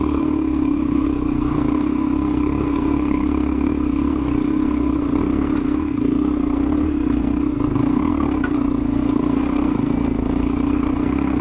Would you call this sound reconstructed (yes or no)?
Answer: yes